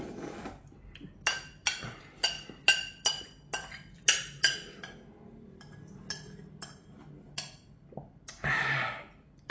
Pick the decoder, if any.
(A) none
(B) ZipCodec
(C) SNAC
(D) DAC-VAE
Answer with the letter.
A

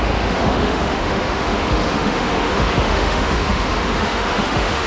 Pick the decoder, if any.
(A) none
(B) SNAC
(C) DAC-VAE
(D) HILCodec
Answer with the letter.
C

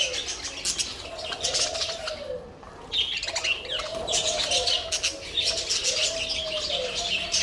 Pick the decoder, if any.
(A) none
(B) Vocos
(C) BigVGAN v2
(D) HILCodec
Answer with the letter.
A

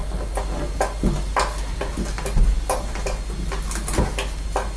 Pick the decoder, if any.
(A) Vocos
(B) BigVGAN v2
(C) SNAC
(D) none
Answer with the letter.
D